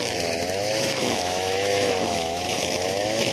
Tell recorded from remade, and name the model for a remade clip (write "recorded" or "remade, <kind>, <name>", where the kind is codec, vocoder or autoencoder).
remade, autoencoder, DAC-VAE